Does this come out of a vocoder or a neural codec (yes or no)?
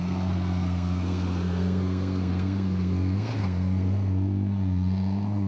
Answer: yes